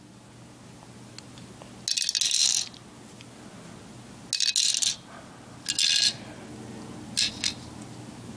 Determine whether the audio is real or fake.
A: real